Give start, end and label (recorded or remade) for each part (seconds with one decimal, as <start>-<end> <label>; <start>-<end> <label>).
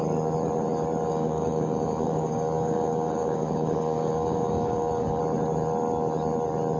0.0-1.1 recorded; 1.1-5.2 remade; 5.2-6.8 recorded